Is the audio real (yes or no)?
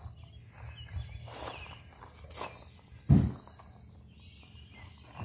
yes